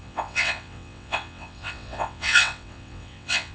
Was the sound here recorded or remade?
remade